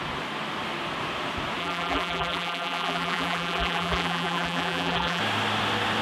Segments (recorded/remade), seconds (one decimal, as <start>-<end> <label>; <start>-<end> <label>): 0.0-1.6 recorded; 1.6-5.2 remade; 5.2-6.0 recorded